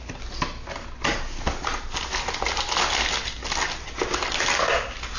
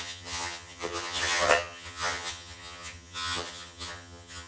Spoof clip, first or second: second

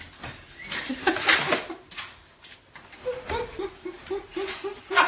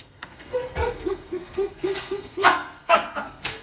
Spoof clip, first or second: second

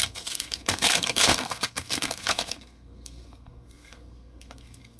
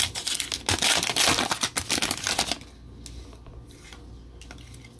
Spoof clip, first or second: first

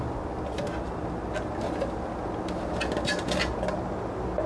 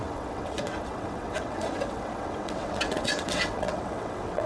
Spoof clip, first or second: second